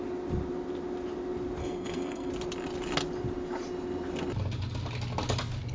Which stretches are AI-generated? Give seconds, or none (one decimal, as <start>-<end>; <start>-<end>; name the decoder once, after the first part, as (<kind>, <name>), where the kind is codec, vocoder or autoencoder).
1.6-2.3 (codec, SNAC)